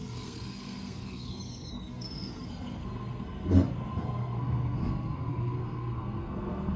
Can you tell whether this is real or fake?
fake